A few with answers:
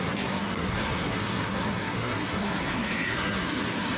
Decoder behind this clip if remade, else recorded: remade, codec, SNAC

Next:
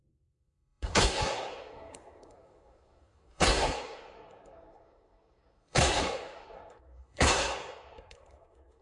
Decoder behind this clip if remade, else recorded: remade, codec, SNAC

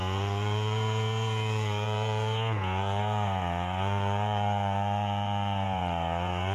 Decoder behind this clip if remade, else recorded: remade, vocoder, Vocos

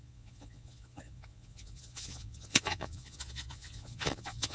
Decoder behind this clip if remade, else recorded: remade, vocoder, Vocos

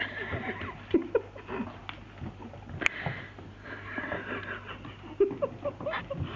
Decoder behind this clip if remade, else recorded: recorded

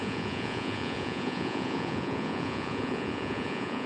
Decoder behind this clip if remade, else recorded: remade, vocoder, Vocos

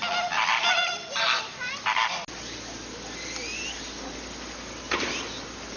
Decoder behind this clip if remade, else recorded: recorded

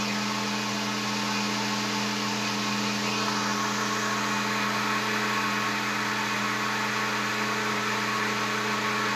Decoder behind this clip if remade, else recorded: recorded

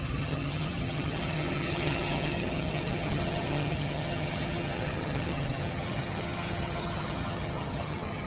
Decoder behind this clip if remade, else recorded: remade, vocoder, HiFi-GAN